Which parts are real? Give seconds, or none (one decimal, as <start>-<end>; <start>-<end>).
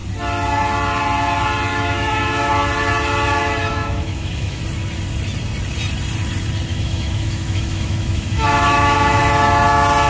0.0-1.7; 2.5-3.7; 4.6-6.7; 9.2-10.1